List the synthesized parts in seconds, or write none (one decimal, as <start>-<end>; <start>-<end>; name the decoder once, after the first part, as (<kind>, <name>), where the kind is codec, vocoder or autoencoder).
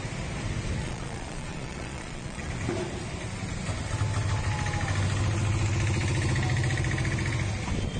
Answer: 0.8-2.5 (vocoder, Vocos)